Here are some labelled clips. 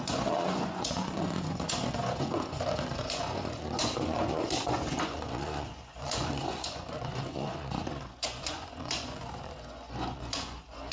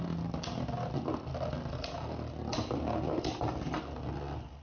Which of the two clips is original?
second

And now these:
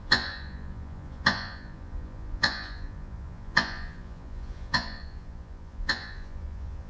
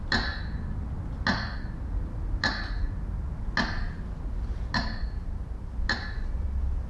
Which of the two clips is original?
second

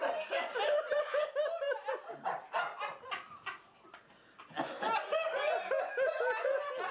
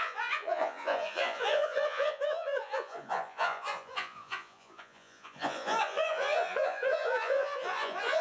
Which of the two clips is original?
first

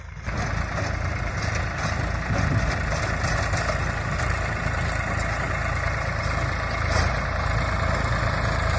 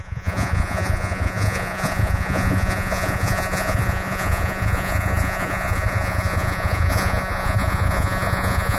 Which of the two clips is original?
first